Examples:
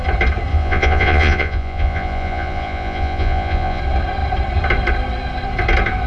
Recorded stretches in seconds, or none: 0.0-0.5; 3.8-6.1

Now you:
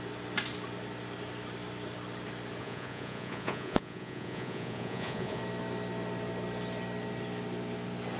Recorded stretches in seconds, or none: 0.0-2.6; 5.4-8.2

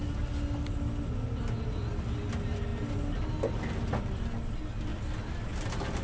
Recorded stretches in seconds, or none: 0.0-6.0

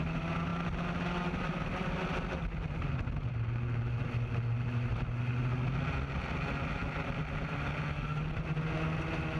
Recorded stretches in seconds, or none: 0.0-9.4